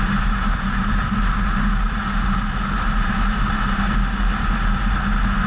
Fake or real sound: real